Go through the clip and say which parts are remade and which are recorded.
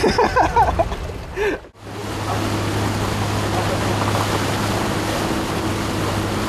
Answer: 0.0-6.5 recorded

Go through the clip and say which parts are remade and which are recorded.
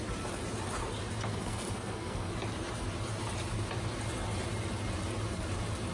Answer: 0.0-1.3 recorded; 1.3-2.3 remade; 2.3-5.9 recorded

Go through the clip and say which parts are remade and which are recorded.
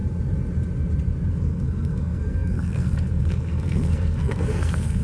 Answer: 0.0-1.3 recorded; 1.3-5.0 remade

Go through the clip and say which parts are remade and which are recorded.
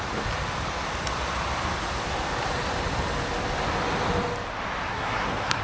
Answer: 0.0-4.9 recorded; 4.9-5.6 remade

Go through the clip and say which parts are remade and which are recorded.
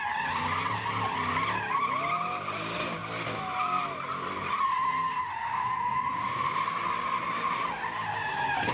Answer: 0.0-8.7 recorded